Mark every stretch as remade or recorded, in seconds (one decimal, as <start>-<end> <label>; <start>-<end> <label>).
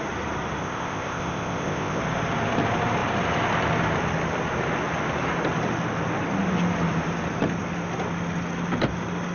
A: 0.0-0.6 recorded; 0.6-2.0 remade; 2.0-9.3 recorded